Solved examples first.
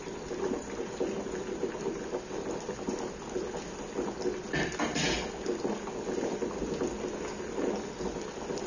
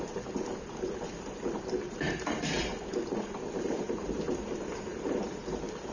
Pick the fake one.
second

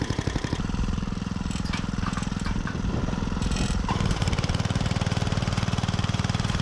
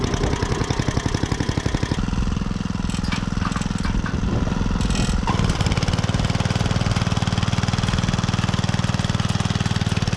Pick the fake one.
first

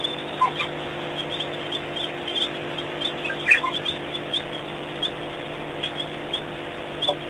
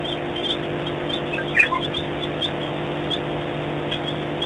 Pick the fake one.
first